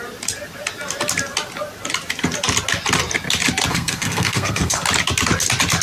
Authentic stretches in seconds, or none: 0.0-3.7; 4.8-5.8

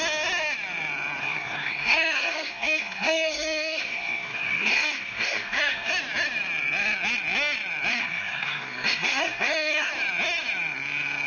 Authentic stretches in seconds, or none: 0.0-1.2; 5.9-7.9; 9.9-11.3

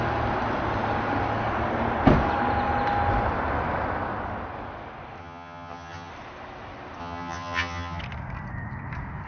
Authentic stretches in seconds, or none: 0.0-5.2; 6.1-7.0; 8.0-9.3

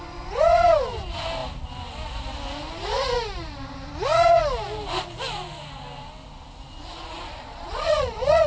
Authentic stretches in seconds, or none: 0.0-7.5

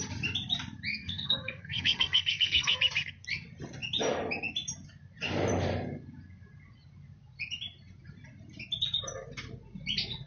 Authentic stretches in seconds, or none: 0.0-0.9; 2.8-10.3

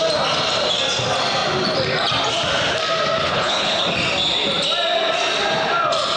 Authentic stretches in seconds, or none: 0.0-3.2; 3.8-6.2

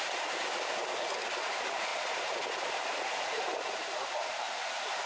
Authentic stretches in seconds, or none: 0.0-1.9; 4.6-5.1

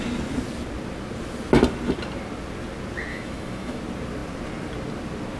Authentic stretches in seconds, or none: 0.0-3.1; 3.8-5.4